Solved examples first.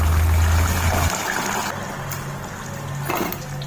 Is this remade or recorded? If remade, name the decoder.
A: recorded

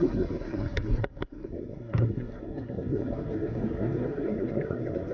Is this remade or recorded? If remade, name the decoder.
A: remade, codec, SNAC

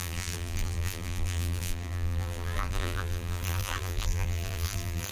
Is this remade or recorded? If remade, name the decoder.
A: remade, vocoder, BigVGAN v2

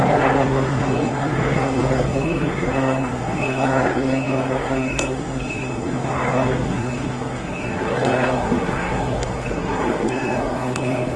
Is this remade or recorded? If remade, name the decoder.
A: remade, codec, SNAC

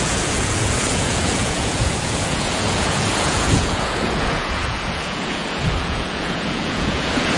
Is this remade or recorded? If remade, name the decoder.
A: remade, vocoder, Vocos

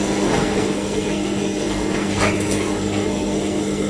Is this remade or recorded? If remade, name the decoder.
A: remade, codec, SNAC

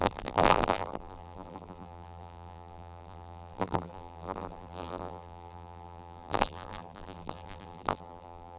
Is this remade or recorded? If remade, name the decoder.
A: remade, vocoder, BigVGAN v2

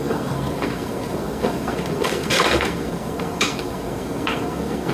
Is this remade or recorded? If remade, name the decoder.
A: remade, codec, SNAC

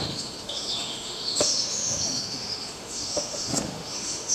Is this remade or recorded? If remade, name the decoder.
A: remade, autoencoder, DAC-VAE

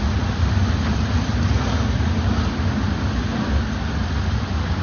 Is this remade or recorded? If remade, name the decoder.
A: recorded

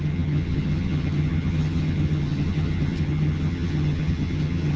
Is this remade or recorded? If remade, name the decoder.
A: remade, vocoder, HiFi-GAN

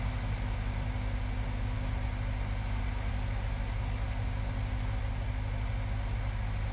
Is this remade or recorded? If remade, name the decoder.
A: recorded